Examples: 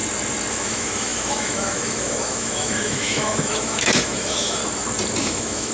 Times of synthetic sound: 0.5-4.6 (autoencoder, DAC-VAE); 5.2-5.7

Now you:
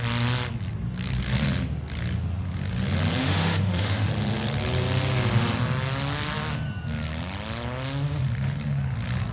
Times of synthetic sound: 3.2-4.1 (autoencoder, DAC-VAE)

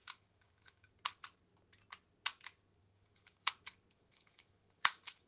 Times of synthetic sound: 0.0-0.9 (autoencoder, DAC-VAE); 2.8-3.5; 3.9-5.3

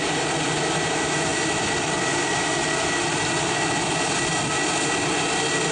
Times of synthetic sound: none

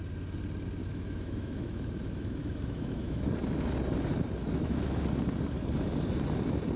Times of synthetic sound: 0.8-3.3 (autoencoder, DAC-VAE); 4.4-5.0

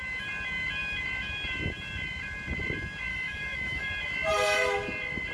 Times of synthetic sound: 3.1-3.9 (autoencoder, DAC-VAE)

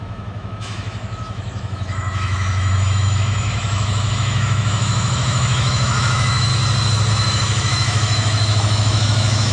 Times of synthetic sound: 0.0-6.5 (autoencoder, DAC-VAE); 7.1-9.5

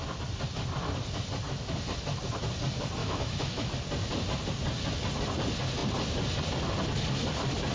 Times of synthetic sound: 3.0-3.7 (autoencoder, DAC-VAE)